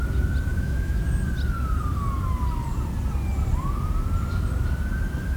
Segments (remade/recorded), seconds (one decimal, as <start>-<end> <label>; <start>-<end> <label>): 0.0-0.5 recorded; 0.5-1.0 remade; 1.0-5.4 recorded